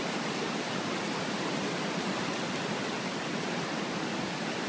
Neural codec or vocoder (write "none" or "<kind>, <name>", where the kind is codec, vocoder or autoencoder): none